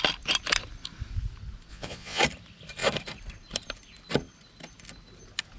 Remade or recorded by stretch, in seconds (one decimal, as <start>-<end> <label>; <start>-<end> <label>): 0.0-1.7 recorded; 1.7-2.2 remade; 2.2-5.6 recorded